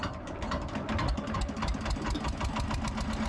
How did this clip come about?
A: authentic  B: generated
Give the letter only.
A